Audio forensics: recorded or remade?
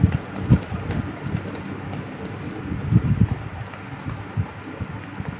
recorded